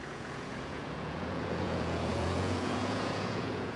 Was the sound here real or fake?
fake